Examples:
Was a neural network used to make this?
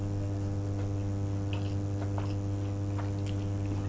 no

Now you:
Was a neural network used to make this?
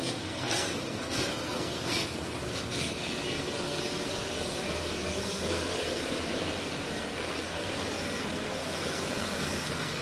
yes